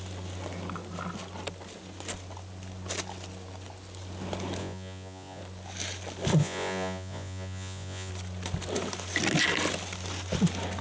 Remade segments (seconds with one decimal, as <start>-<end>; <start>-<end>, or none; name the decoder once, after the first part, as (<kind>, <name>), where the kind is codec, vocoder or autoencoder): 4.6-5.4 (vocoder, Vocos); 6.4-8.1

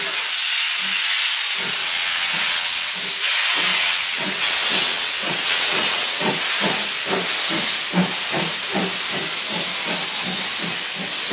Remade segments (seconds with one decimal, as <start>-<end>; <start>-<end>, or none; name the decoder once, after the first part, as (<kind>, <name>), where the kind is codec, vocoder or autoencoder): 1.8-2.9 (vocoder, WaveNeXt); 3.7-6.4

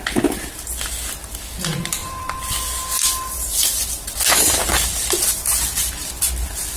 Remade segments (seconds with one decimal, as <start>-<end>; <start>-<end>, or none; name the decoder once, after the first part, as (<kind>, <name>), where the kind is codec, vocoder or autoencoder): 2.0-2.8 (vocoder, BigVGAN v2)

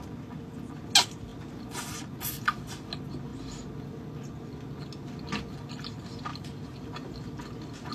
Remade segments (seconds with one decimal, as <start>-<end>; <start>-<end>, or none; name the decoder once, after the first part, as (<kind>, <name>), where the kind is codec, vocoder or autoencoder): 6.3-7.4 (vocoder, BigVGAN v2)

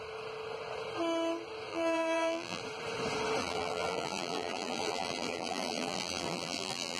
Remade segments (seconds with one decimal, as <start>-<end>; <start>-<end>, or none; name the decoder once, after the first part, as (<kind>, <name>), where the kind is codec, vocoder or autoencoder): 1.7-2.6 (vocoder, BigVGAN v2); 3.4-7.0